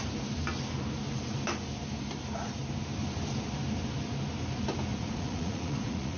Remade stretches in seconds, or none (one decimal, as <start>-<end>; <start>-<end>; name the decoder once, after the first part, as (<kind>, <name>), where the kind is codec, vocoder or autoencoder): 4.9-6.2 (vocoder, Vocos)